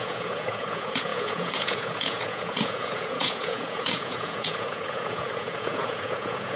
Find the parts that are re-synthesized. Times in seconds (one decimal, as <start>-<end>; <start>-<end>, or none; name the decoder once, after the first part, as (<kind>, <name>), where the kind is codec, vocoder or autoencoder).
0.0-6.6 (vocoder, Vocos)